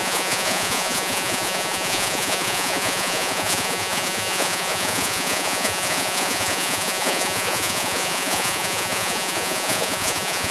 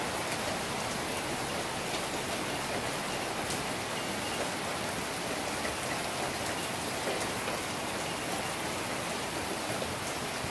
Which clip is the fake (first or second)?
first